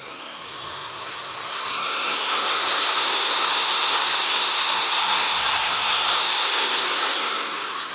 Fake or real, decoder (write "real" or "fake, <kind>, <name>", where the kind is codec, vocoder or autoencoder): fake, codec, SNAC